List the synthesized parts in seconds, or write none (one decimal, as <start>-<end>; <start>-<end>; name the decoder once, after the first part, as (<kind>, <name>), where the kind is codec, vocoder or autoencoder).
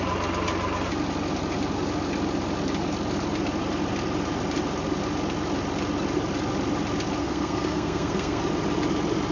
7.2-8.4 (codec, SNAC)